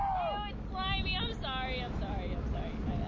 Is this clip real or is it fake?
real